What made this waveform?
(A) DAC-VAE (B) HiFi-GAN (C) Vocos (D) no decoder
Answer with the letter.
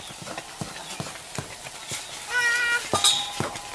D